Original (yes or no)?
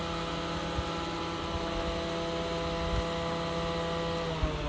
yes